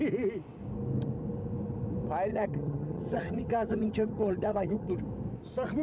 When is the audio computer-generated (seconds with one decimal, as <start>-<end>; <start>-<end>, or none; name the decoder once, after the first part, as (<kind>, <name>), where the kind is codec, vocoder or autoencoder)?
2.3-4.9 (vocoder, HiFi-GAN)